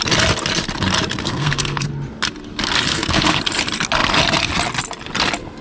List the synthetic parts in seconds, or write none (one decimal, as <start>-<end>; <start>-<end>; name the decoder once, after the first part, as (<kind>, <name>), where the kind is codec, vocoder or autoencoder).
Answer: 1.2-1.9 (codec, SNAC); 2.9-3.4